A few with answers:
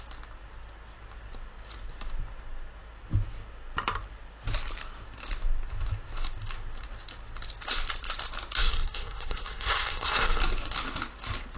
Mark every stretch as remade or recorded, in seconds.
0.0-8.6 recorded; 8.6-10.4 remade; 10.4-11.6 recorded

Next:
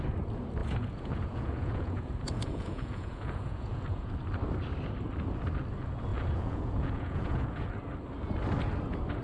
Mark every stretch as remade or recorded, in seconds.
0.0-0.6 recorded; 0.6-4.1 remade; 4.1-6.1 recorded; 6.1-7.7 remade; 7.7-9.2 recorded

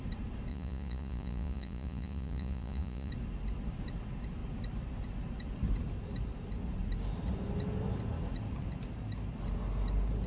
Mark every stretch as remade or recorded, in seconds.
0.0-0.5 recorded; 0.5-3.1 remade; 3.1-10.3 recorded